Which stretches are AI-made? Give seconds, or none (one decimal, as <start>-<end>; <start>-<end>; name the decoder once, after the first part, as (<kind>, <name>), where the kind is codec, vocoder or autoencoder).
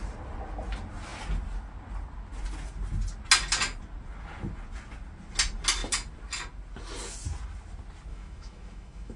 8.1-9.2 (autoencoder, DAC-VAE)